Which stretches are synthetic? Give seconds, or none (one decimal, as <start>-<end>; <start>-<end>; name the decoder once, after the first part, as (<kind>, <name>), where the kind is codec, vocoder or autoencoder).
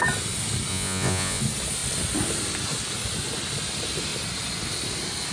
0.7-1.4 (vocoder, Vocos)